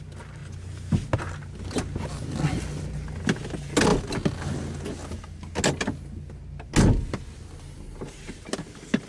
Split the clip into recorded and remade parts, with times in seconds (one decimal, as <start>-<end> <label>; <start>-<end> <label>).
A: 0.0-9.1 recorded